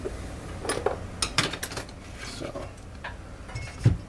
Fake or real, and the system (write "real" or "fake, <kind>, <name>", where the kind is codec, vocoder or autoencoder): real